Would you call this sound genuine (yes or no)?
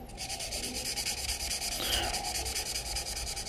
yes